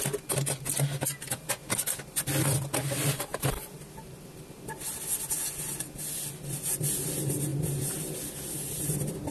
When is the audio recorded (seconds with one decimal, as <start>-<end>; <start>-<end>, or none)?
0.0-9.3